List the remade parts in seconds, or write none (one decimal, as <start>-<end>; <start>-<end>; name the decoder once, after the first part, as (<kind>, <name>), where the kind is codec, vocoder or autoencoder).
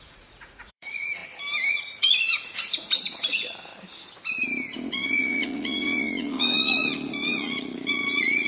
0.0-1.2 (vocoder, Vocos); 1.7-3.7; 4.9-8.5